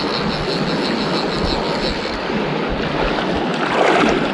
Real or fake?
real